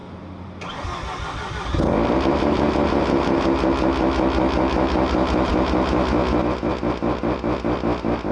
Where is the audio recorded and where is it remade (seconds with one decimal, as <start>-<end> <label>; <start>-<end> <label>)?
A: 0.0-8.3 recorded